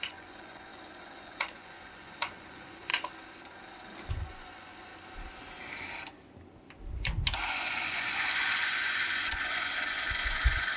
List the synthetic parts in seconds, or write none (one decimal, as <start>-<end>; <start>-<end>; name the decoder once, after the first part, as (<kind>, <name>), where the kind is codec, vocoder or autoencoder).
0.0-2.9 (vocoder, Vocos); 4.1-4.9; 7.5-10.8